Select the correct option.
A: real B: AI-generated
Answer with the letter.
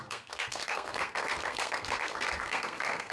B